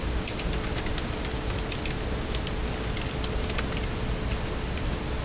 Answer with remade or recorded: recorded